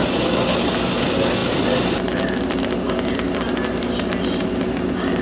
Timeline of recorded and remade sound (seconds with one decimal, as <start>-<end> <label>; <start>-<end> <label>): 0.0-5.2 recorded